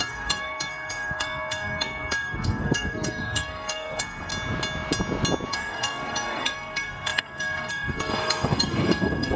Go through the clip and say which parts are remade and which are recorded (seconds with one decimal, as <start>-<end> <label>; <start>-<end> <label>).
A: 0.0-4.3 remade; 4.3-5.5 recorded; 5.5-9.4 remade